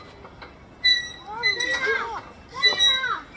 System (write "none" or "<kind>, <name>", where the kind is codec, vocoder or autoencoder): none